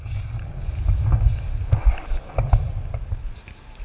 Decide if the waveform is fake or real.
real